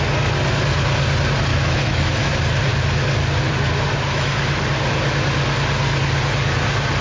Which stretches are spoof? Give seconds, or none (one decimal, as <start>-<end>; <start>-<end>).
1.5-2.3; 3.9-4.6